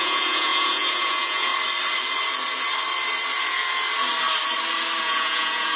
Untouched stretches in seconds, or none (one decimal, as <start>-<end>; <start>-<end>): 1.5-5.0